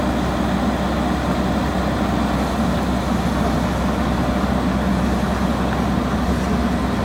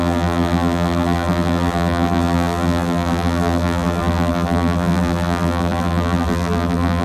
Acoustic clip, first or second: first